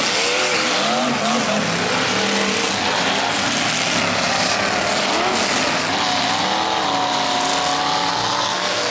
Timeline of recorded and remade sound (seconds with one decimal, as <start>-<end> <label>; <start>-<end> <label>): 0.0-8.1 recorded; 8.1-8.9 remade